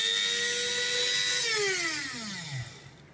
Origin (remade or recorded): recorded